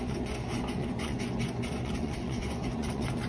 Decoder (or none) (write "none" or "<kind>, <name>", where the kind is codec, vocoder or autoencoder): vocoder, Vocos